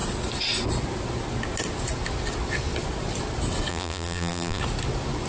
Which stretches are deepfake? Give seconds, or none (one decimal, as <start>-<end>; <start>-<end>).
3.7-4.6